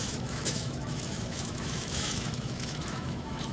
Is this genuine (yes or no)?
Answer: no